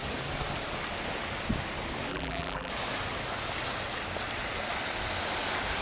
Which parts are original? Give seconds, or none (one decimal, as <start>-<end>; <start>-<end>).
0.0-2.1; 2.7-5.8